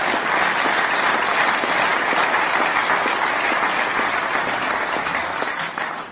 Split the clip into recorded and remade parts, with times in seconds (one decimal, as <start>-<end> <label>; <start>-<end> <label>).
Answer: 0.0-6.1 recorded